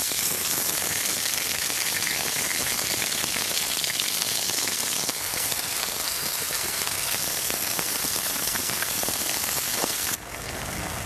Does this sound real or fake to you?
fake